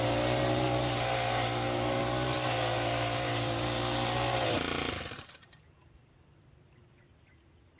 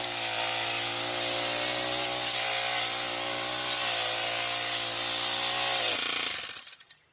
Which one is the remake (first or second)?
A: first